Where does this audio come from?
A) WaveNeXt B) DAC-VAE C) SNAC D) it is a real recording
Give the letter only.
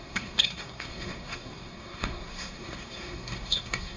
C